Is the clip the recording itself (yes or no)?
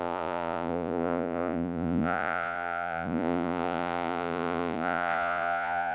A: no